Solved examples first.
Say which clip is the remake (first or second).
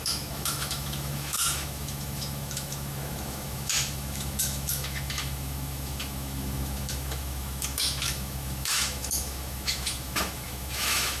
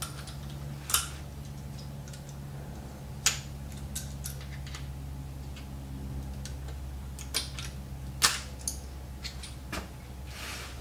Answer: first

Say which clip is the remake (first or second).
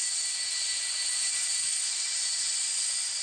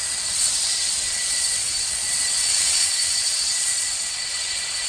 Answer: second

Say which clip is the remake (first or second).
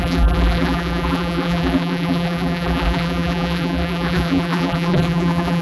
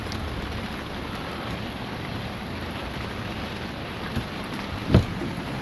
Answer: first